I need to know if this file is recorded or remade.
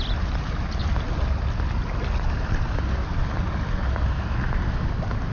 recorded